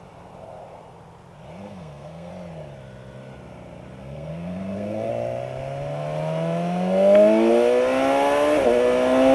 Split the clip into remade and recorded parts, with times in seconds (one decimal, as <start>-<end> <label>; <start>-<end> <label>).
0.0-1.6 recorded; 1.6-2.3 remade; 2.3-4.0 recorded; 4.0-5.1 remade; 5.1-9.3 recorded